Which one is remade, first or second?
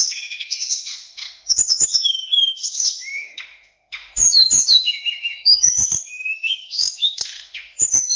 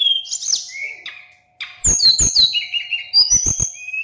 first